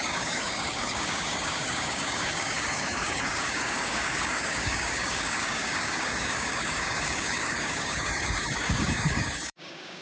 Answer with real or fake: fake